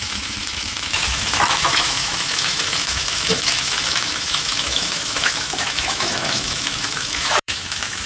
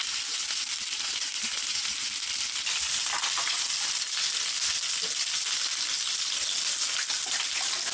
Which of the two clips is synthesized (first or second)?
first